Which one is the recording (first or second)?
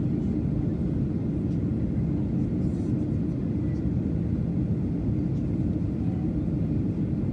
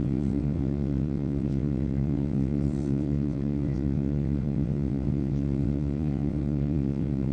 first